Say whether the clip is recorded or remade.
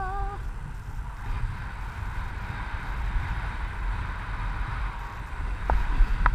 remade